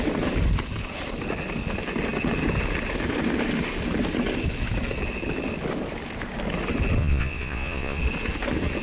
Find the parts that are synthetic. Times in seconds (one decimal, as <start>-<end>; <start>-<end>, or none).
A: 7.0-8.0